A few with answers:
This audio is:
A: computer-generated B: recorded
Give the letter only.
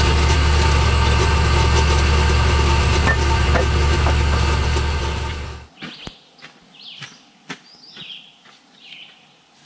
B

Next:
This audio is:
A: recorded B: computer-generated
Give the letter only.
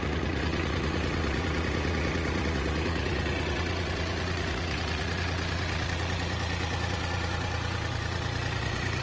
B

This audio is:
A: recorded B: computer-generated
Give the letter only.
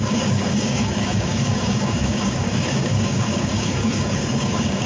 B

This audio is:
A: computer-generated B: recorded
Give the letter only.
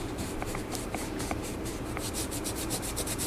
A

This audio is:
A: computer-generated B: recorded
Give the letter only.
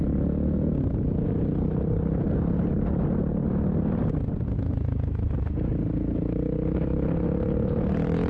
B